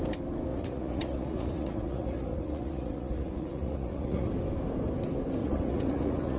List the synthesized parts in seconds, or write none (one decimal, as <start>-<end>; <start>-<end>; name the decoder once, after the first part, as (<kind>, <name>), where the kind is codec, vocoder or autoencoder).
0.5-4.3 (vocoder, Vocos); 5.4-6.4